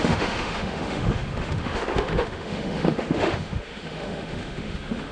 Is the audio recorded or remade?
remade